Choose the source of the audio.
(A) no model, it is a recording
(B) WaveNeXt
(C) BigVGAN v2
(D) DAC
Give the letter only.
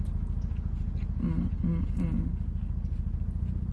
A